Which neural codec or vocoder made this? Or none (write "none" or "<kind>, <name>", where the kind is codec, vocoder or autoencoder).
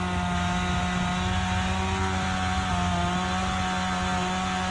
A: none